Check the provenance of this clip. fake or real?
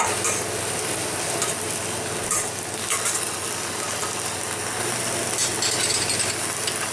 real